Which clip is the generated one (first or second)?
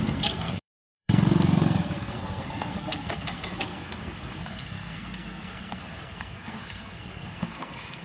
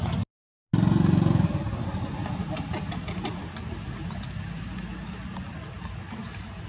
first